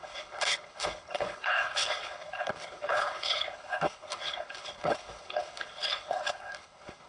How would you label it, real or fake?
fake